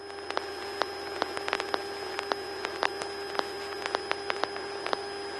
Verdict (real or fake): real